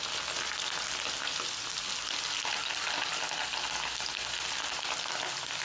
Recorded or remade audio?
recorded